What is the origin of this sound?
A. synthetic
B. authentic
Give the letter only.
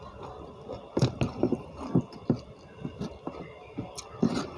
B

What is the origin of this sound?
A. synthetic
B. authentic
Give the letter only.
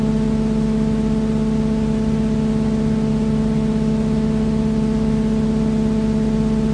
B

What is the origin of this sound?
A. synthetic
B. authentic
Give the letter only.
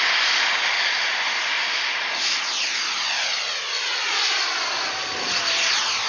B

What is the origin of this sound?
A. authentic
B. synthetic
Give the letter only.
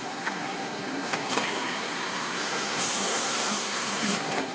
B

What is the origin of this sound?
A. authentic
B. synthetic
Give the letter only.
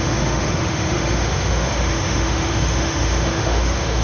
B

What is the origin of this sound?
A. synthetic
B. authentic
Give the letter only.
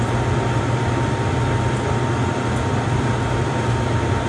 B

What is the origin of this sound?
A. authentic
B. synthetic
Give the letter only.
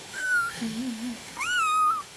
B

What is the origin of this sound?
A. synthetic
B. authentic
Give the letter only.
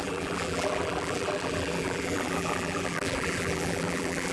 A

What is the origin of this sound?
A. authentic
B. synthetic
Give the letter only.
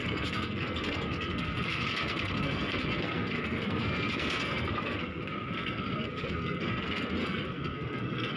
B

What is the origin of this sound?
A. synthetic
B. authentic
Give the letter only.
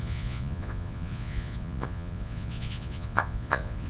A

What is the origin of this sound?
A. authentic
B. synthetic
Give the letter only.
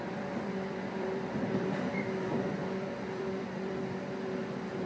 B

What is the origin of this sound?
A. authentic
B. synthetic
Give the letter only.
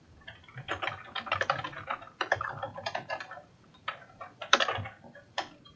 B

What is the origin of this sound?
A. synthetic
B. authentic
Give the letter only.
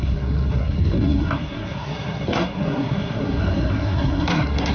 A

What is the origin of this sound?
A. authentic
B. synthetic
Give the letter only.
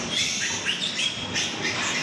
A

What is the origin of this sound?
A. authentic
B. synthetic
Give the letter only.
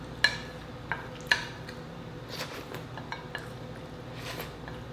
A